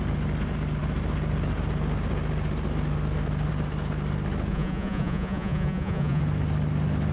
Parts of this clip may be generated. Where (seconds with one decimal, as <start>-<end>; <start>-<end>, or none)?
4.5-6.2